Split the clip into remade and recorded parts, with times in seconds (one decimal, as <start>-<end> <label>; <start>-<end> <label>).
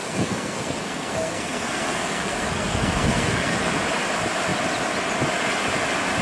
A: 0.0-3.7 remade; 3.7-6.2 recorded